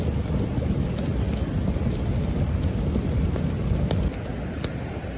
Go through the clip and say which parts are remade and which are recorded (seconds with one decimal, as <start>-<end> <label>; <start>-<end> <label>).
0.0-5.2 recorded